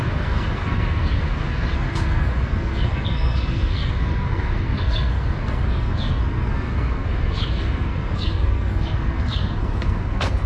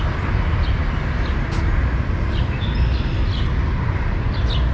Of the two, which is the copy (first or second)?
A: first